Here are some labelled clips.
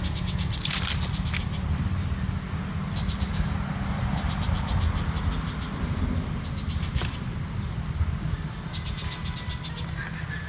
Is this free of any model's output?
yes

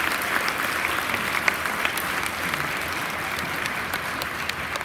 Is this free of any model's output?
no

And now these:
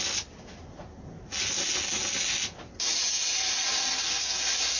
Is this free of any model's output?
yes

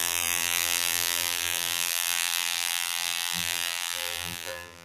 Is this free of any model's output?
no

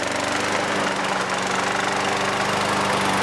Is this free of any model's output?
yes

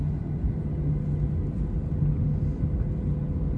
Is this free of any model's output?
yes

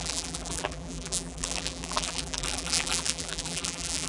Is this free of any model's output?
no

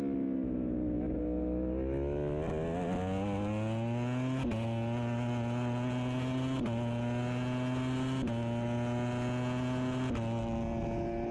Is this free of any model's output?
yes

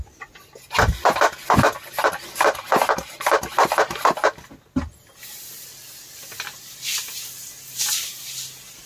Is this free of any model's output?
yes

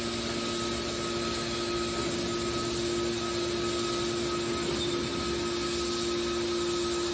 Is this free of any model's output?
yes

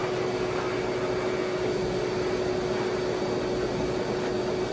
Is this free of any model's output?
yes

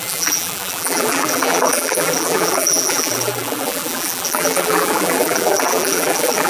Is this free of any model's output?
no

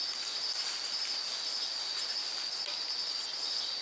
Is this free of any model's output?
yes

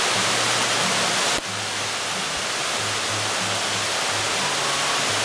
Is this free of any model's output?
yes